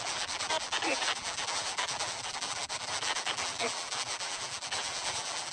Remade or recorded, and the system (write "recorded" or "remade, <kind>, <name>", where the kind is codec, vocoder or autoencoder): remade, vocoder, BigVGAN v2